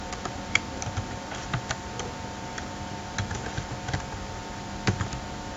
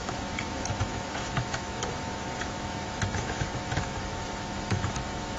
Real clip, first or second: first